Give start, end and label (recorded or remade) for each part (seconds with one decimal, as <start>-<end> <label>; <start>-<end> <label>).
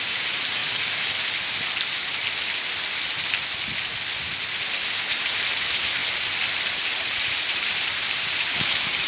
0.0-0.6 remade; 0.6-4.8 recorded; 4.8-6.0 remade; 6.0-6.6 recorded; 6.6-9.1 remade